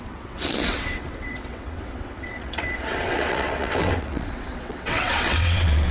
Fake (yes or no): yes